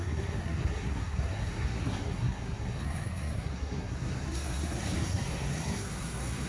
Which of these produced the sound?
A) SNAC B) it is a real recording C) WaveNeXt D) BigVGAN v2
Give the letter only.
A